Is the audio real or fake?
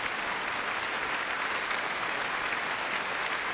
real